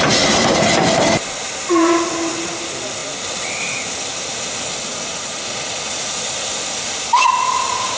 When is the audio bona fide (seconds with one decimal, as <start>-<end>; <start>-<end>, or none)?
0.0-8.0